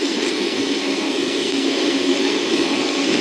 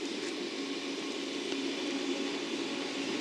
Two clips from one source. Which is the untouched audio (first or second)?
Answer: second